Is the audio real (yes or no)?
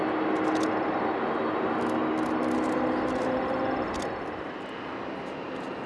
yes